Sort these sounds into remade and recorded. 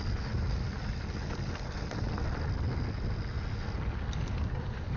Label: recorded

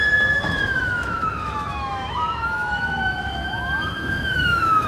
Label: remade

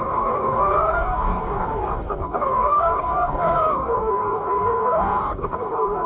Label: remade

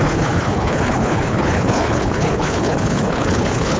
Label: remade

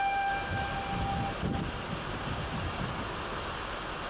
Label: recorded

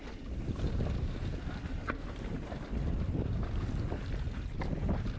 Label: remade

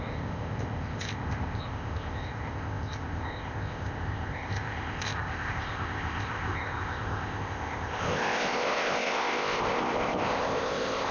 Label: remade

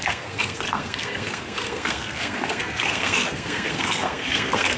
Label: remade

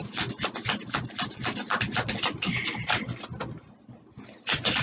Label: recorded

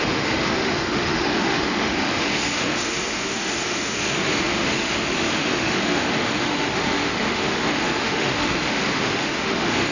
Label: remade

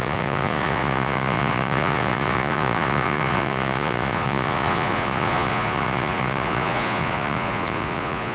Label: remade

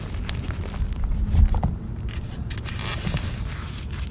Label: recorded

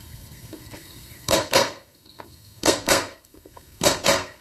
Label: remade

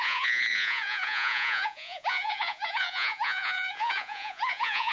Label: remade